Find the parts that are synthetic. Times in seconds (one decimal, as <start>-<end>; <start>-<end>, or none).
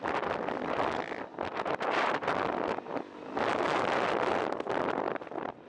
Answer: none